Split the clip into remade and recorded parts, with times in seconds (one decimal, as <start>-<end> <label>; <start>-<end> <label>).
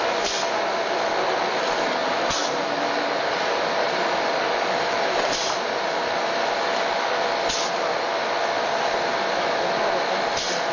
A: 0.0-2.0 recorded; 2.0-6.0 remade; 6.0-10.7 recorded